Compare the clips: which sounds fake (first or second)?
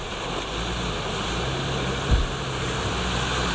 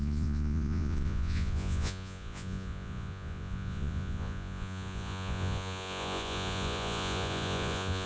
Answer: second